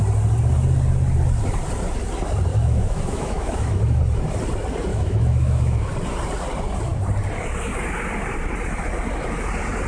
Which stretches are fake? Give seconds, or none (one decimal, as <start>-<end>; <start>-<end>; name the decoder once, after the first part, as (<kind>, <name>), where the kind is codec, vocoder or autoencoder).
2.5-4.0 (autoencoder, DAC-VAE); 4.9-5.9